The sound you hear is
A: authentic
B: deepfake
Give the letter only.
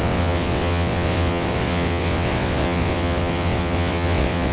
B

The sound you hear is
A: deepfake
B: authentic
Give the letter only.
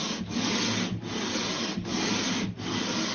B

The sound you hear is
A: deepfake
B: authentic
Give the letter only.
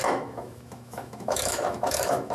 A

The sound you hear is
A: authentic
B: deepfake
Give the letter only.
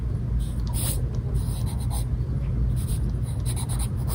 A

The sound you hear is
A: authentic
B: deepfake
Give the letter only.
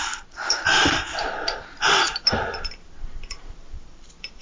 B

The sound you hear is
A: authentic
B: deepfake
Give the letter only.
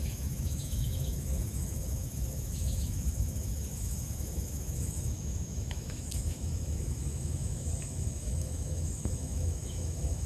B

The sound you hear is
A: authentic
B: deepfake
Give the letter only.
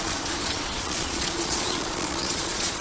B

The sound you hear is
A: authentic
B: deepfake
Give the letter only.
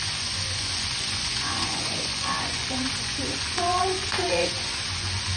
B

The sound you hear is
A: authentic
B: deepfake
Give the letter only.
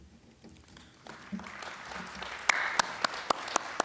A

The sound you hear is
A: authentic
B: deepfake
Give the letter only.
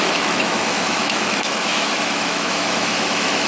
B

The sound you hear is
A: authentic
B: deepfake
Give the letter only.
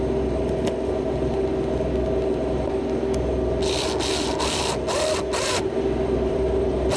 A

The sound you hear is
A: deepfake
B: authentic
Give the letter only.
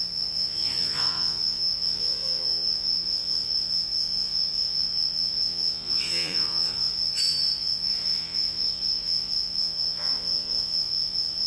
A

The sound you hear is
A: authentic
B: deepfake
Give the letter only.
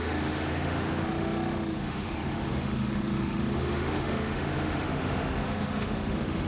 B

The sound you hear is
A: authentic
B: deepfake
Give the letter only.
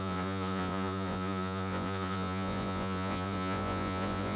B